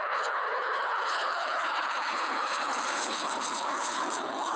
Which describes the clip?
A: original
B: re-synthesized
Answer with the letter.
B